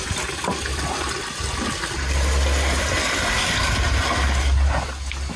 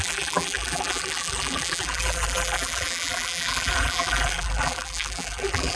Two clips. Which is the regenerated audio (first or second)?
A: second